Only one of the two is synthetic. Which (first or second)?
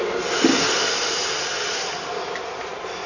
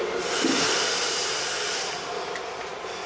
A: second